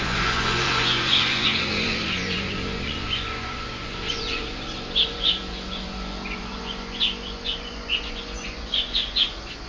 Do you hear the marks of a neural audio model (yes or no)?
yes